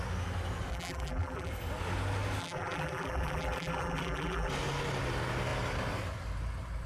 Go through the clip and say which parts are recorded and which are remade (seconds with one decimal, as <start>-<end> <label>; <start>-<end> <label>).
0.0-0.7 recorded; 0.7-1.5 remade; 1.5-2.4 recorded; 2.4-4.5 remade; 4.5-6.9 recorded